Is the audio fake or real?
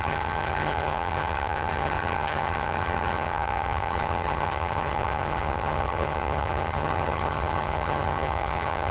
fake